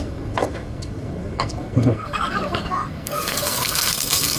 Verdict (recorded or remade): remade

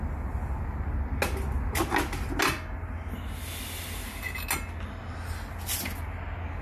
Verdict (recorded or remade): recorded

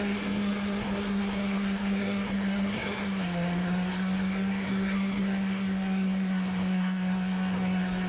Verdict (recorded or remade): remade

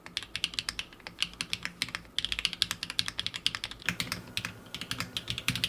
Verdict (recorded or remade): recorded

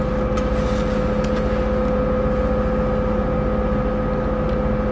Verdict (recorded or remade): recorded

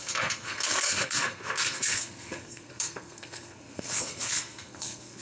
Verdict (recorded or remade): remade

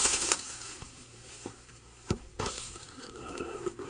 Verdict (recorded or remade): remade